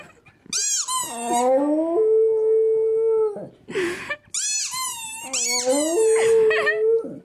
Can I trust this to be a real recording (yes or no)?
yes